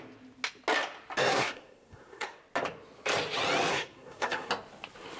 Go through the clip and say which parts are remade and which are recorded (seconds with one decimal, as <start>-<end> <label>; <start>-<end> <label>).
0.0-1.3 recorded; 1.3-2.4 remade; 2.4-3.7 recorded; 3.7-4.5 remade; 4.5-5.2 recorded